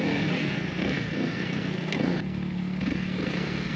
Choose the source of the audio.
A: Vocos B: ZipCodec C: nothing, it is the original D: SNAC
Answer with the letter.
D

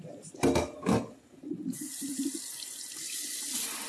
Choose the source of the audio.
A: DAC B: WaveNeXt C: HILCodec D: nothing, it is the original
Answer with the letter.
D